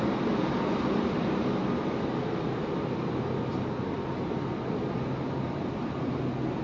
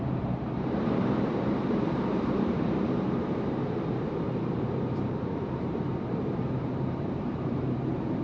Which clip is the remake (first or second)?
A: second